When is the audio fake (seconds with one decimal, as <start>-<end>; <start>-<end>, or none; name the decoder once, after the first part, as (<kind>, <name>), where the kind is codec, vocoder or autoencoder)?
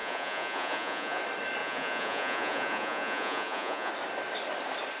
0.0-1.2 (vocoder, Vocos); 1.6-3.9